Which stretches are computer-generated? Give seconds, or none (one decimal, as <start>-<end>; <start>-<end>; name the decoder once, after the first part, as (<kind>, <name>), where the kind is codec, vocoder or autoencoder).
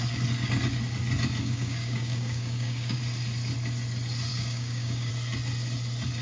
1.4-3.0 (codec, DAC); 4.3-5.1